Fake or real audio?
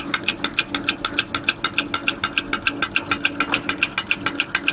real